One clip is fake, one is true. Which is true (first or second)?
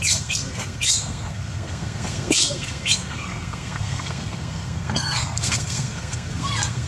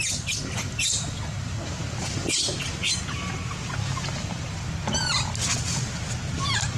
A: second